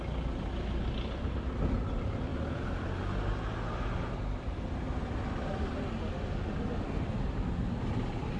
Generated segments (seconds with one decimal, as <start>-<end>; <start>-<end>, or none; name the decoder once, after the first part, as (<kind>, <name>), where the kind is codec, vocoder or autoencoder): none